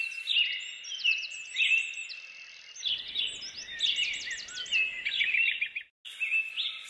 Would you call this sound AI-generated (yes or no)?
no